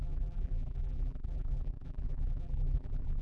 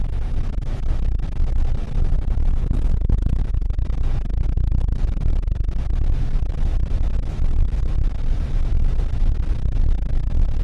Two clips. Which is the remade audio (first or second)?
first